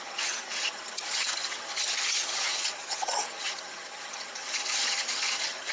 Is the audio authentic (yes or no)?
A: no